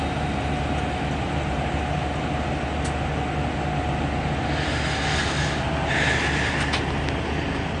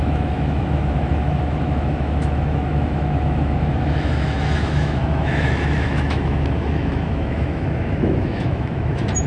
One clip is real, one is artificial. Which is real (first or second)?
first